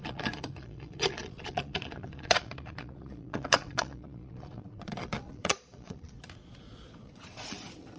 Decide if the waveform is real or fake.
fake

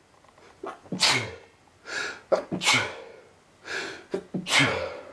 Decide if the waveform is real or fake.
real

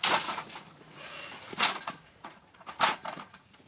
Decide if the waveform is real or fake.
fake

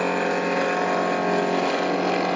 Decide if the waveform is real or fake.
real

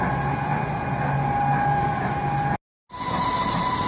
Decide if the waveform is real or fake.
real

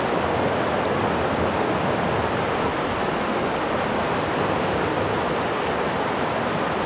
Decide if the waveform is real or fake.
real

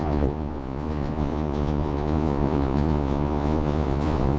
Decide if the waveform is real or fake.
fake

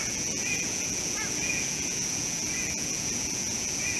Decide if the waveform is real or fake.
fake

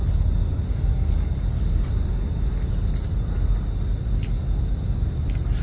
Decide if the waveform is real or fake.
real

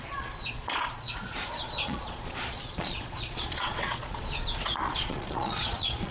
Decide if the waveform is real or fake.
fake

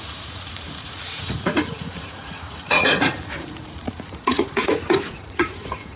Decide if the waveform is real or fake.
fake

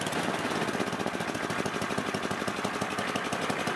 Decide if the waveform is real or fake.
real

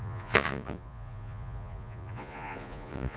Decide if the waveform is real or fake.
fake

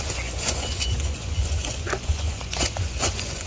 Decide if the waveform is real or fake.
fake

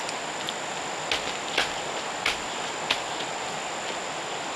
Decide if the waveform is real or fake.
real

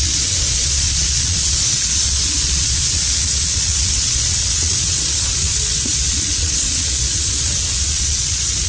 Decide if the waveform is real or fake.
fake